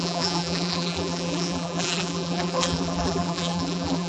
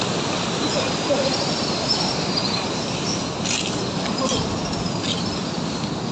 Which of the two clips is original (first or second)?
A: second